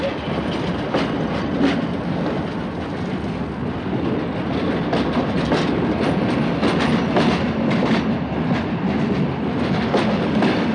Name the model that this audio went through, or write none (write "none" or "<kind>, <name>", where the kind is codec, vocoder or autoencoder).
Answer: none